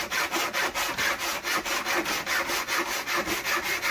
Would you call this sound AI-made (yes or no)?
no